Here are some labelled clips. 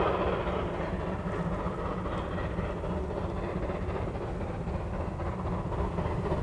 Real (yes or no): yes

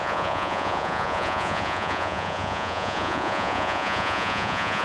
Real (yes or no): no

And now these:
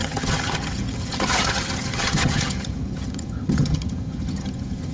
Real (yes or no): no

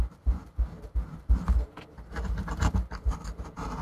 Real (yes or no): no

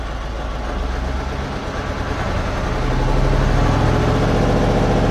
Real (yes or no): yes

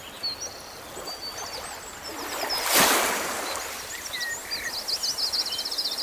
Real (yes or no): yes